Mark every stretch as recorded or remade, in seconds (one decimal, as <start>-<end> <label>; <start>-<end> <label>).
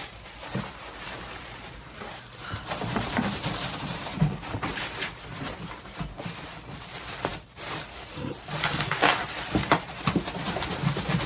0.0-11.3 remade